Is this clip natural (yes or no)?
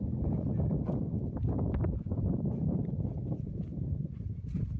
yes